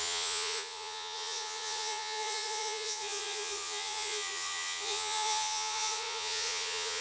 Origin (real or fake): fake